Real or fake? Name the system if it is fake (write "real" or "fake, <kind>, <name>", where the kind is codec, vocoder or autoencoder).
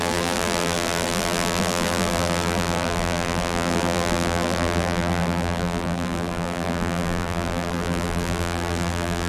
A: fake, vocoder, BigVGAN v2